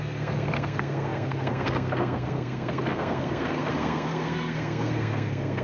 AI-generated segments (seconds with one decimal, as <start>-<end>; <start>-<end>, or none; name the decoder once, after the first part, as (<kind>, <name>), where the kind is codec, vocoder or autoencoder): 0.0-5.6 (codec, SNAC)